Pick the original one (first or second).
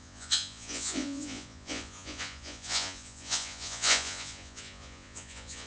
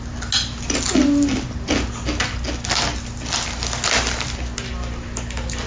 second